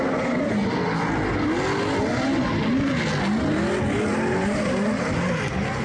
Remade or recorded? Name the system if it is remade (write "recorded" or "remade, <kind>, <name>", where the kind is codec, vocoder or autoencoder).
recorded